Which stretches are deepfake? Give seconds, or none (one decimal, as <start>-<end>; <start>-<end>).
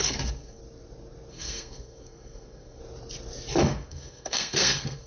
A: 0.0-0.6; 1.3-2.8; 3.6-5.1